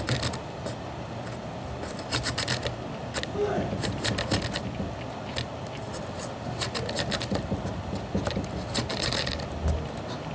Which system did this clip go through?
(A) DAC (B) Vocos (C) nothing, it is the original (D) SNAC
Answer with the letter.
C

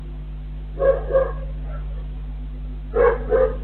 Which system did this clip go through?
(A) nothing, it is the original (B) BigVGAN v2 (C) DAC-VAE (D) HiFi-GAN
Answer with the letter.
A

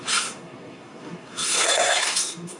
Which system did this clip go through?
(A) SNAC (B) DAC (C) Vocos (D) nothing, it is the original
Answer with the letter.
A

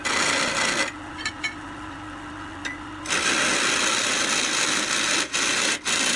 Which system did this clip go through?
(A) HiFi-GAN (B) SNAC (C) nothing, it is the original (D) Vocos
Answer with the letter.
C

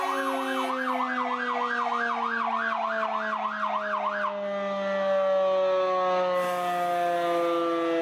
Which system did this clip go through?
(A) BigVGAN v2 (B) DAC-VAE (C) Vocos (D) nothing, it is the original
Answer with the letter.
D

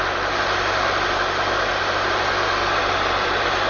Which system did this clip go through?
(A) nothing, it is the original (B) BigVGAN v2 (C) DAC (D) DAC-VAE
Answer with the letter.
B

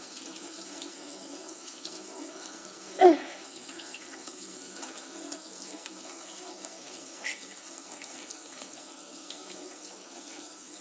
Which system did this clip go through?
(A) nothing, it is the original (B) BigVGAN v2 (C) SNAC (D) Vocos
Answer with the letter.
C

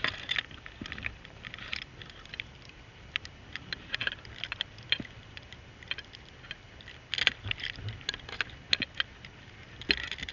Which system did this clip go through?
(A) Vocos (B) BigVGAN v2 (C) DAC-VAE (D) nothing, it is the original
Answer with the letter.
B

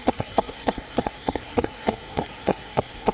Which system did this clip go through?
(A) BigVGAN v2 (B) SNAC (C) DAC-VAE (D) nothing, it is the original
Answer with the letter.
B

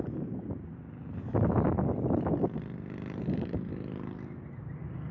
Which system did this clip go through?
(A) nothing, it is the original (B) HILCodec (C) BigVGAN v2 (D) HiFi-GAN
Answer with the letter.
A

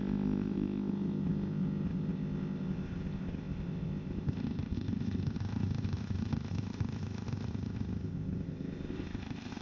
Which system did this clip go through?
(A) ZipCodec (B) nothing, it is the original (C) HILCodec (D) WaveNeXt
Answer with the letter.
A